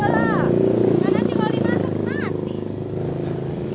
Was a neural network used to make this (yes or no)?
no